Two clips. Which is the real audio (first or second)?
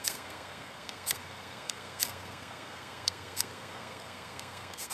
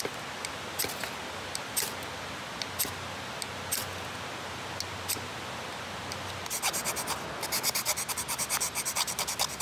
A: second